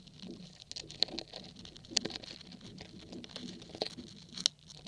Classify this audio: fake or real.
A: real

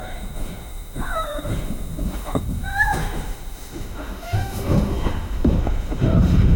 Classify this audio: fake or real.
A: fake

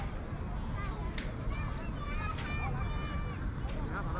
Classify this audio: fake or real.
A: real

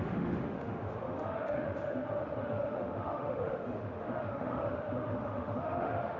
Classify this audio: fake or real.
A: fake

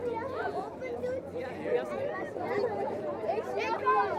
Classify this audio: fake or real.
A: real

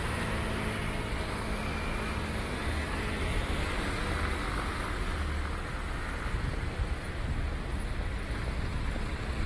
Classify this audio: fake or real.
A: real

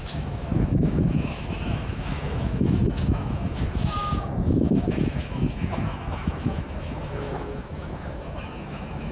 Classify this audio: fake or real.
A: fake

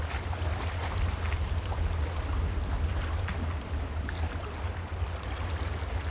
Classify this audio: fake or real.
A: real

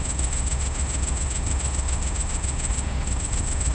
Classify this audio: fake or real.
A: fake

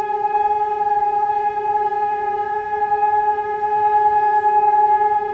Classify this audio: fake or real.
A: fake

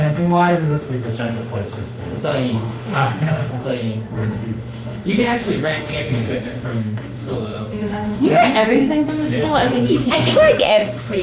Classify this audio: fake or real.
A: fake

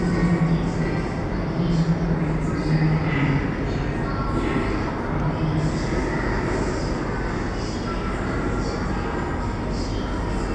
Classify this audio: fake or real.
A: real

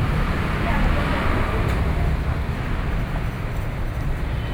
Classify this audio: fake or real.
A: real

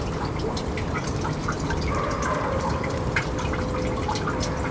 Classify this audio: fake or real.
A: real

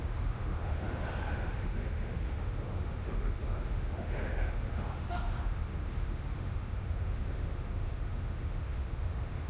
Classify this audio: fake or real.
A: fake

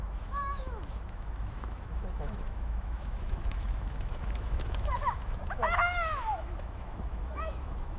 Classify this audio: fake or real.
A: fake